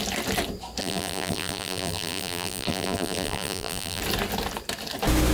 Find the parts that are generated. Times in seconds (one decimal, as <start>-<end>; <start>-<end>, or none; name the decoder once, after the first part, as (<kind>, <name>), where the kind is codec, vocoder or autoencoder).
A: 0.8-4.0 (vocoder, BigVGAN v2)